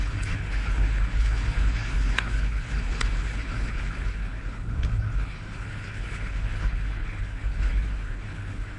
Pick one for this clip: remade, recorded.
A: remade